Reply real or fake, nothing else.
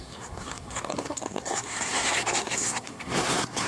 fake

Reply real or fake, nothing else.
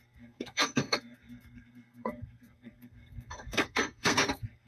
fake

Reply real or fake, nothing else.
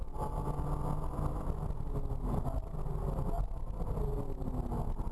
real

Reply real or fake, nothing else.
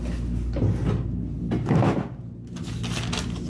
real